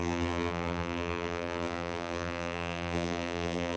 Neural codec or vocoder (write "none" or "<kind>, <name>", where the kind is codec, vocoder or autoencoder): vocoder, BigVGAN v2